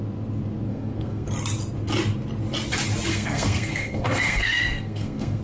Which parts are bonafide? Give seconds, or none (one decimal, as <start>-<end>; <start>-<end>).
0.0-0.7; 1.3-3.1